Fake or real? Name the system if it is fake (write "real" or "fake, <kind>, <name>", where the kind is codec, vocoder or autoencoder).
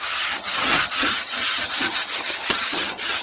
fake, vocoder, HiFi-GAN